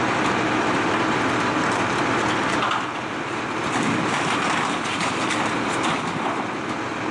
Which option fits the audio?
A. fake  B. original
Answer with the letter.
B